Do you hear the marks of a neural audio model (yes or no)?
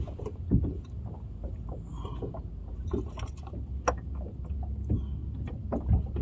no